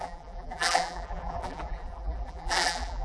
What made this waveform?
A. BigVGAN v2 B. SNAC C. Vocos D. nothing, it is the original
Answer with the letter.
A